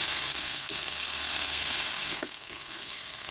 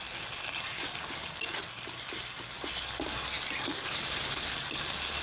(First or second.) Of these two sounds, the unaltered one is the second